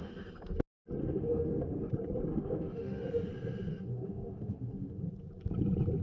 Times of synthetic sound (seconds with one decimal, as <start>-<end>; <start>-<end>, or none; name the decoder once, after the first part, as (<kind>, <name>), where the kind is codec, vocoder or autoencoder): 1.0-1.9 (autoencoder, DAC-VAE); 2.3-3.3; 3.7-5.1